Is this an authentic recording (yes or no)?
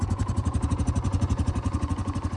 no